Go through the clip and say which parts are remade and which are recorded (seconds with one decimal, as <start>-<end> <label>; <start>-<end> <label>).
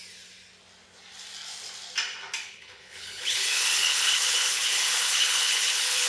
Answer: 0.0-2.4 recorded; 2.4-6.1 remade